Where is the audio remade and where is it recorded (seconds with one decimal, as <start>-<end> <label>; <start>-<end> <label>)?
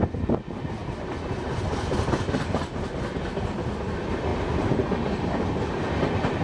0.0-6.4 recorded